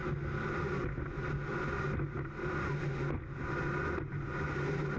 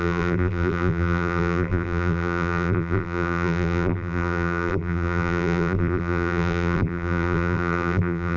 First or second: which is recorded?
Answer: first